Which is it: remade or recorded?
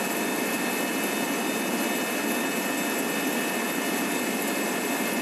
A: recorded